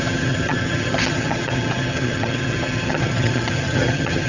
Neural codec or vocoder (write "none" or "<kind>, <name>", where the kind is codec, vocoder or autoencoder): vocoder, HiFi-GAN